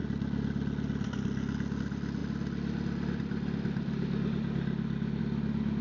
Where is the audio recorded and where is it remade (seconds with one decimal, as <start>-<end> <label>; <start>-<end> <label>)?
0.0-5.8 recorded